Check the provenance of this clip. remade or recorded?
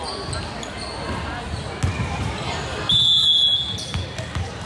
recorded